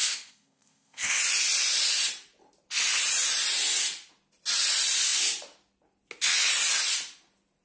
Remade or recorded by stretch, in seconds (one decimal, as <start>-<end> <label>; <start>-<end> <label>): 0.0-1.2 remade; 1.2-7.6 recorded